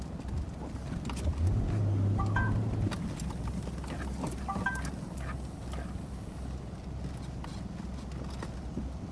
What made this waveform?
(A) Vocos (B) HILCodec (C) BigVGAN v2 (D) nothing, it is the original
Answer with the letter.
D